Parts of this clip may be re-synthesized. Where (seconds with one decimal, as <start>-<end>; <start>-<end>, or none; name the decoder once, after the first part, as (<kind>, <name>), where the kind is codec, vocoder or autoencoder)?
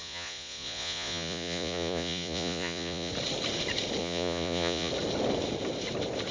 0.0-3.1 (vocoder, Vocos); 4.0-4.9